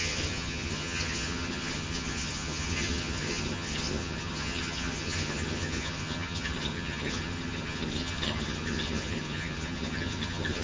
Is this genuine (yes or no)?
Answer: no